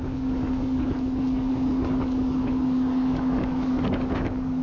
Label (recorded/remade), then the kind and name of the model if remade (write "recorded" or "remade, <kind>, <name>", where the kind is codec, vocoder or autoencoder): remade, codec, DAC